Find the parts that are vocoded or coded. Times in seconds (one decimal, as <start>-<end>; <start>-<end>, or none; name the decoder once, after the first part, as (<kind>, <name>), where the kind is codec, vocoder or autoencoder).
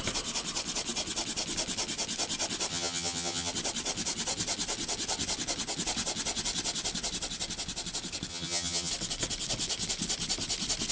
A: 2.7-3.5 (vocoder, HiFi-GAN); 8.3-8.9